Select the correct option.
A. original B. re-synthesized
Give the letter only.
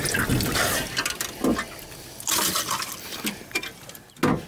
A